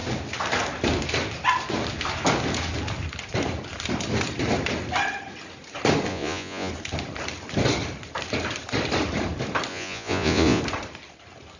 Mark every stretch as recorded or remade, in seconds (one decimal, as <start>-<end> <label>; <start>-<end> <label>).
0.0-6.1 recorded; 6.1-6.7 remade; 6.7-9.7 recorded; 9.7-10.6 remade; 10.6-11.6 recorded